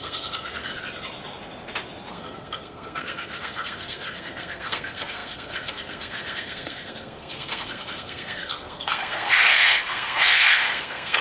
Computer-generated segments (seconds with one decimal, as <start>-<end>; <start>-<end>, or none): 0.0-0.7; 2.1-11.2